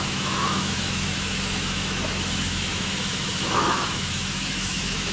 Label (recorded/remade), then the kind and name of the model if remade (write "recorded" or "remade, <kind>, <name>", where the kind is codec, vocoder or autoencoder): remade, autoencoder, DAC-VAE